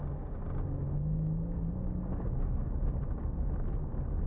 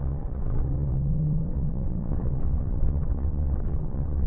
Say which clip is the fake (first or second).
second